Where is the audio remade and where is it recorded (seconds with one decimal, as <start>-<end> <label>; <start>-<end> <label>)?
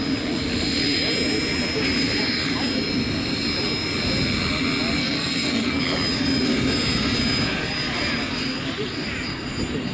0.0-5.0 recorded; 5.0-5.8 remade; 5.8-9.9 recorded